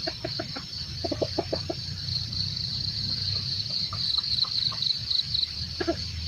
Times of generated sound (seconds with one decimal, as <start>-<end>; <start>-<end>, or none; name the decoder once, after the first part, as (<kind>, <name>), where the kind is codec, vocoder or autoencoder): 0.0-5.0 (vocoder, BigVGAN v2); 5.5-6.3